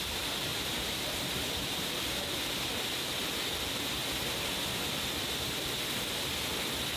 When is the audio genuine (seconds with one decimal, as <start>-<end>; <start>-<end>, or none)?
0.0-0.5; 2.2-4.0; 6.3-7.0